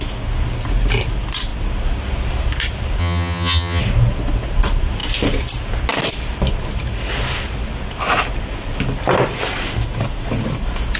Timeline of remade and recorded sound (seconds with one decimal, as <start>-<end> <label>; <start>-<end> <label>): 0.0-3.0 recorded; 3.0-3.8 remade; 3.8-11.0 recorded